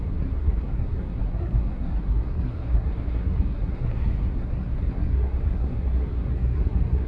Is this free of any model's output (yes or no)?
no